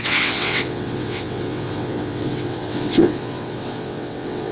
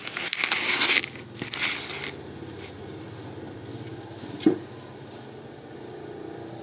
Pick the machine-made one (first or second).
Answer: first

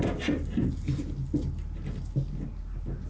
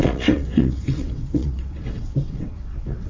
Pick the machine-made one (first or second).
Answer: second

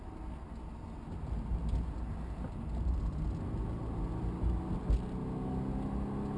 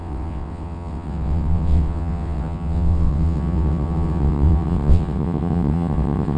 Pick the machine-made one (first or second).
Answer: second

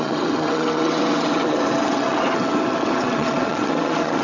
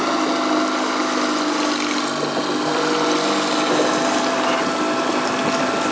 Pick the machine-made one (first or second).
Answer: first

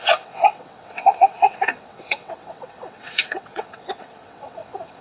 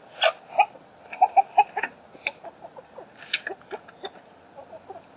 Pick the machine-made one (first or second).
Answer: first